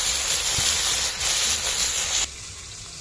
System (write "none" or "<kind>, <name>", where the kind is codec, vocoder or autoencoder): none